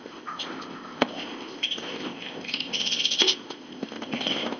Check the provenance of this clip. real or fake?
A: fake